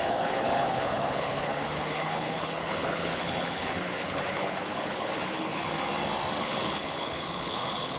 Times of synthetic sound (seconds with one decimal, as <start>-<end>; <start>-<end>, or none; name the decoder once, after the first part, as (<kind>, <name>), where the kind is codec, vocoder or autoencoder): 0.0-5.7 (codec, HILCodec); 6.4-8.0